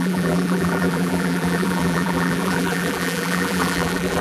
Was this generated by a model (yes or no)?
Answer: yes